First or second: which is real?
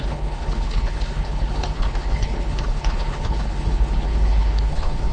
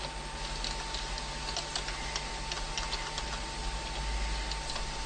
second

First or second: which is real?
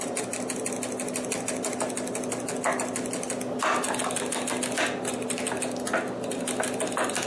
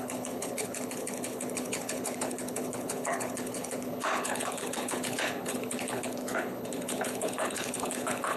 first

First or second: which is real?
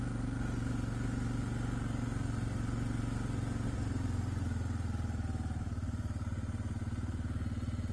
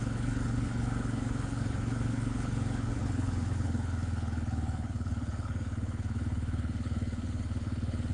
first